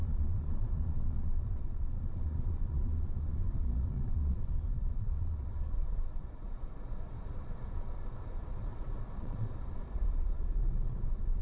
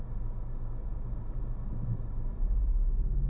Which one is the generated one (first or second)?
first